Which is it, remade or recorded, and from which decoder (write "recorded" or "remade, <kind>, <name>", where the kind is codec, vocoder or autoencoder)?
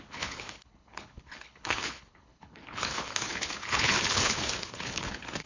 remade, codec, HILCodec